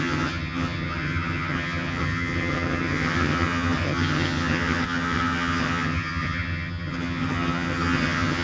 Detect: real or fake fake